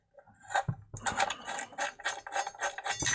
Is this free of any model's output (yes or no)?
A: yes